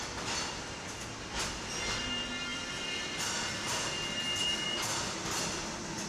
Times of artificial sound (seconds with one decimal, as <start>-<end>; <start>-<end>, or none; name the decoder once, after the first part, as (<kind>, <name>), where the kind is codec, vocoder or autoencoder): 2.5-5.4 (vocoder, BigVGAN v2)